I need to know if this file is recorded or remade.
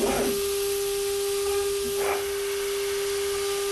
recorded